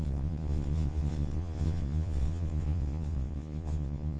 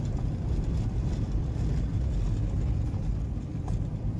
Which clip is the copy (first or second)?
first